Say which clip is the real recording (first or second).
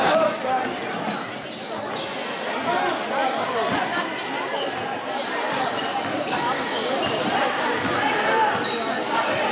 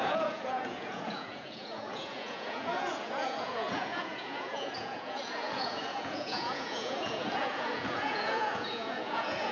first